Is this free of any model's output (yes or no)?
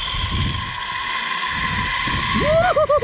yes